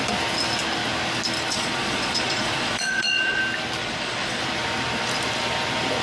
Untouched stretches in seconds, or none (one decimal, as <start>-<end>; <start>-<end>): 0.0-1.5; 3.4-3.8; 4.4-6.0